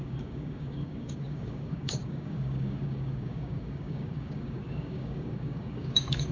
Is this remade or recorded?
remade